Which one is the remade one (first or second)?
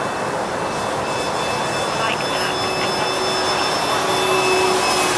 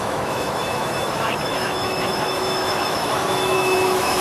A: second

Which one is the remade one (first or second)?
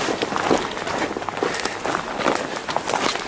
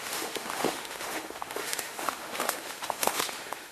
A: second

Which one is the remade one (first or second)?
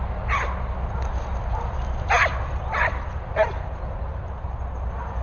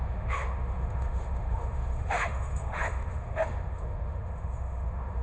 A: second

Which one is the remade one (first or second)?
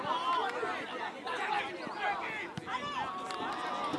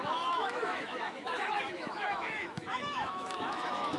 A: second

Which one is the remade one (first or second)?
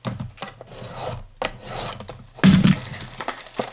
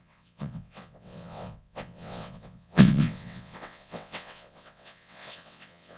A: second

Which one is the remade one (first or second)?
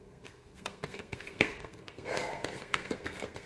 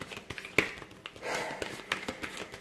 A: first